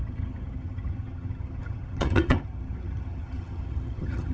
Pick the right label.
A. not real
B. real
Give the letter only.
A